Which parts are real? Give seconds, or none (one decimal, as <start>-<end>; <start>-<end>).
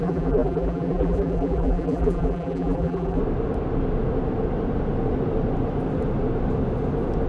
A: 3.2-7.3